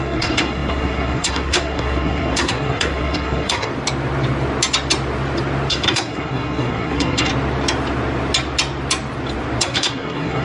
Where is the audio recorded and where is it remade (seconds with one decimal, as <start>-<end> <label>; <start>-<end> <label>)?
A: 0.0-3.7 remade; 3.7-5.7 recorded; 5.7-7.3 remade; 7.3-9.6 recorded; 9.6-10.4 remade